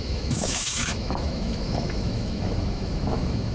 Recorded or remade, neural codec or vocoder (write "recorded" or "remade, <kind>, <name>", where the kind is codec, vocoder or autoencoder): remade, autoencoder, DAC-VAE